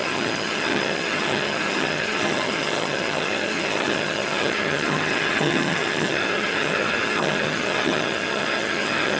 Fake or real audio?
fake